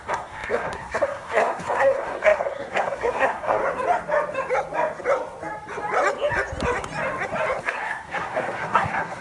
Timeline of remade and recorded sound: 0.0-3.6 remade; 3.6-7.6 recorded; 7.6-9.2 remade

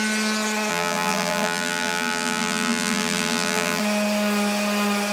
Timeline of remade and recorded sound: 0.0-0.7 recorded; 0.7-3.8 remade; 3.8-5.1 recorded

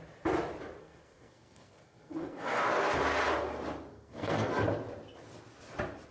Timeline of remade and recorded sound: 0.0-0.8 recorded; 0.8-2.6 remade; 2.6-3.9 recorded; 3.9-4.5 remade; 4.5-6.1 recorded

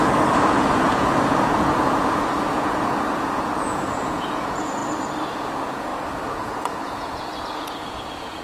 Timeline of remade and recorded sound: 0.0-4.8 remade; 4.8-5.3 recorded; 5.3-8.4 remade

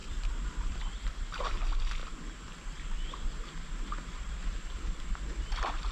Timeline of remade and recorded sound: 0.0-0.8 remade; 0.8-5.9 recorded

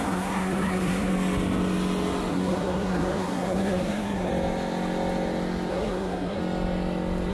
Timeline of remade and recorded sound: 0.0-1.1 remade; 1.1-2.3 recorded; 2.3-4.3 remade; 4.3-5.7 recorded; 5.7-6.4 remade; 6.4-7.3 recorded